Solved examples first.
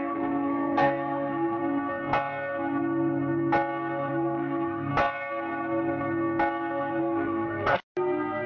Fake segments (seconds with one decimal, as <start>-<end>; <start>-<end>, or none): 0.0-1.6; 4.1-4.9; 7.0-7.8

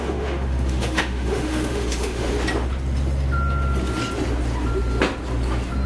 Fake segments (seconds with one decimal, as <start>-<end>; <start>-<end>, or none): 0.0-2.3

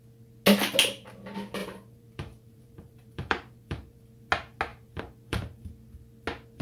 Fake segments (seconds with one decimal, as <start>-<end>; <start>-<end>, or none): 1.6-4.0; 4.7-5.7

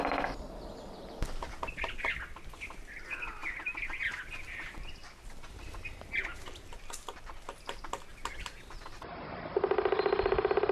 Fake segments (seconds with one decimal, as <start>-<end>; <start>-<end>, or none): none

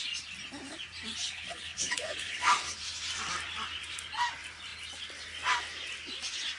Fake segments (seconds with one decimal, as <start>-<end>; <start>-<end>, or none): 1.2-2.8

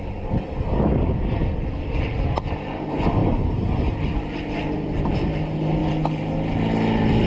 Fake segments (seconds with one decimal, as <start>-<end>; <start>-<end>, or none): none